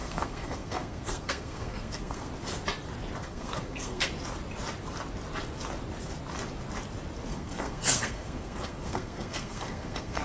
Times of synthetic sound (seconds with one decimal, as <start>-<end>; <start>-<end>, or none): 0.0-2.3; 3.2-4.1; 7.3-10.2